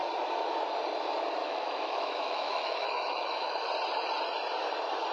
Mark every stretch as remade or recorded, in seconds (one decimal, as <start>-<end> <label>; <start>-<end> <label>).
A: 0.0-1.4 recorded; 1.4-3.7 remade; 3.7-5.1 recorded